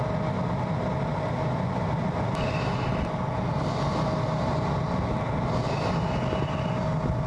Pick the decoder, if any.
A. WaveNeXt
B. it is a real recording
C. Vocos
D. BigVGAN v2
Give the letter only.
B